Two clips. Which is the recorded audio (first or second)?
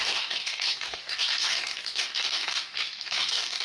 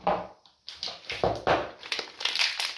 second